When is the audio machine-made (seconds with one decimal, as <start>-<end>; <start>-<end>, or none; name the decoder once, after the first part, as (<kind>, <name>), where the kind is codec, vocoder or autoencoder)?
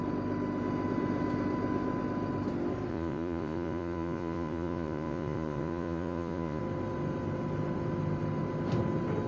2.9-6.6 (vocoder, Vocos)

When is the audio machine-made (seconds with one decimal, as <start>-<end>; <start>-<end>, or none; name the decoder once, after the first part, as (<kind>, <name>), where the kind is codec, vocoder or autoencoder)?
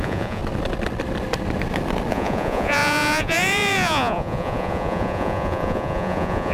0.0-0.4 (vocoder, Vocos); 2.1-6.5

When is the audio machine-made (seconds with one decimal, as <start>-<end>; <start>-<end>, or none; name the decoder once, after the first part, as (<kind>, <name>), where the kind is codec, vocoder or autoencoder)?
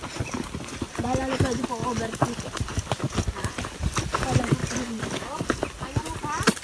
none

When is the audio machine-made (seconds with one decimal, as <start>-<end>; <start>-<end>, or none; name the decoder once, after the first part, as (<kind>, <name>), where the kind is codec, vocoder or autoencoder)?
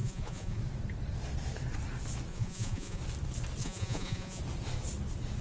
0.0-0.6 (vocoder, Vocos); 2.3-3.0; 3.6-4.4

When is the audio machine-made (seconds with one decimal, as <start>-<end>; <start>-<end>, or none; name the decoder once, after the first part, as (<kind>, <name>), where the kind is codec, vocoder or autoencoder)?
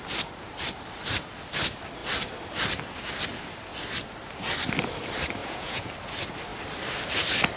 5.4-5.9 (vocoder, Vocos)